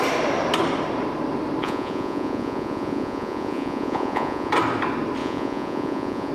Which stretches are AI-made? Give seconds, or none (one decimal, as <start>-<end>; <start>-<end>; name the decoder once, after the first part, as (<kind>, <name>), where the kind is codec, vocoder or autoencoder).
1.6-4.5 (vocoder, Vocos); 5.2-6.3